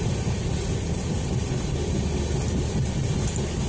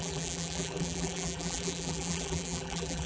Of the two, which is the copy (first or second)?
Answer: second